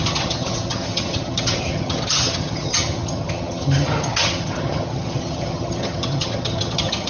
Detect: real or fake fake